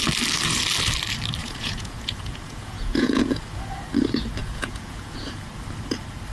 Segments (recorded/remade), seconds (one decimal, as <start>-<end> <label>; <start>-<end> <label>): 0.0-1.4 recorded; 1.4-3.3 remade; 3.3-4.4 recorded; 4.4-5.5 remade; 5.5-6.3 recorded